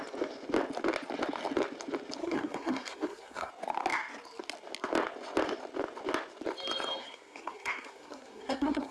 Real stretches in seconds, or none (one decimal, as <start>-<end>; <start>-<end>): 0.0-2.2; 3.5-7.0